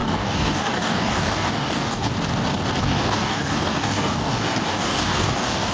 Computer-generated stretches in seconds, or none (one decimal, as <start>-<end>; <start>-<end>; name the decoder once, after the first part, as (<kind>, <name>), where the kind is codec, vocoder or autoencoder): 0.0-2.1 (codec, DAC); 2.8-5.7